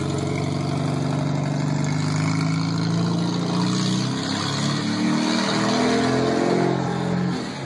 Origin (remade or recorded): recorded